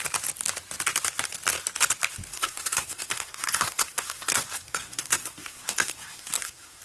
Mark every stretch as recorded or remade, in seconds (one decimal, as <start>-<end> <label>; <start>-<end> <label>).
0.0-2.3 recorded; 2.3-6.8 remade